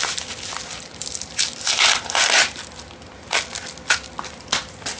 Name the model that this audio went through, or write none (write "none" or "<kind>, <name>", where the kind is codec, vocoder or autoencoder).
none